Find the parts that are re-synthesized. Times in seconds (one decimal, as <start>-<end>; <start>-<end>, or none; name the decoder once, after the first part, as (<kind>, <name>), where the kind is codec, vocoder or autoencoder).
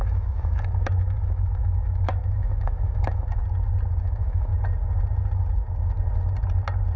0.0-3.4 (autoencoder, DAC-VAE); 4.0-4.5